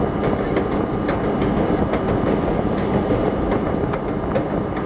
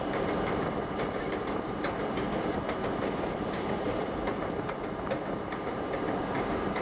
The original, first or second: first